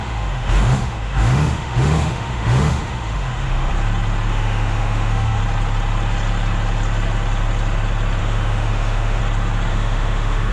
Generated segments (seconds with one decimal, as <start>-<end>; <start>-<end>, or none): 0.0-3.7; 4.3-5.4; 8.2-9.2; 9.7-10.5